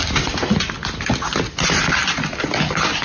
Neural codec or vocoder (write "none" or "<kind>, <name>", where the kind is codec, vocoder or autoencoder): none